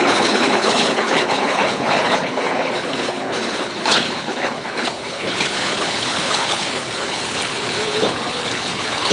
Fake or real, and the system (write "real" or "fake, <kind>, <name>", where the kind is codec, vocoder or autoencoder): fake, codec, HILCodec